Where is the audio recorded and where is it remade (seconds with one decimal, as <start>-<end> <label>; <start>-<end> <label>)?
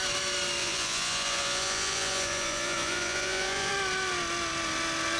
0.0-0.6 recorded; 0.6-3.7 remade; 3.7-5.2 recorded